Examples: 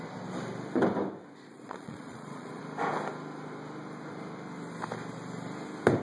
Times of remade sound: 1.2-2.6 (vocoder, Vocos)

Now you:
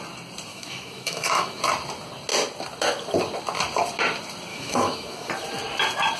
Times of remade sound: 0.5-1.6 (autoencoder, DAC-VAE); 4.5-5.3

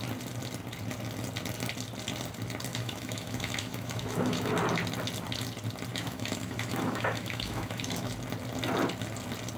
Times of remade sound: 2.7-4.5 (autoencoder, DAC-VAE); 5.9-8.1

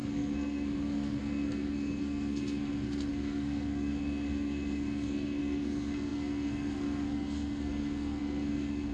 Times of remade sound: 0.0-8.9 (codec, SNAC)

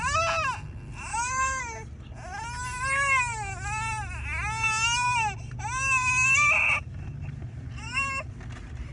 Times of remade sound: 1.1-1.6 (autoencoder, DAC-VAE)

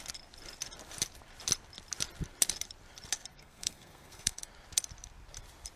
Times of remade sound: 3.3-4.4 (codec, SNAC)

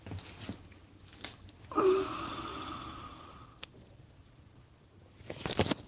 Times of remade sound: 1.1-4.6 (vocoder, BigVGAN v2)